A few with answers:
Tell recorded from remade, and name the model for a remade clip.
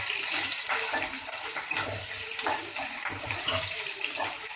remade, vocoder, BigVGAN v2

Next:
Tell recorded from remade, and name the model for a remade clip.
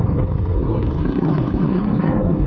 remade, codec, SNAC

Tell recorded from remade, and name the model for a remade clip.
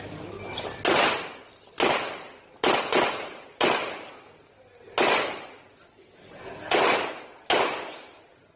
recorded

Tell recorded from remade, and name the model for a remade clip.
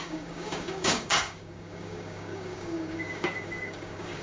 remade, codec, DAC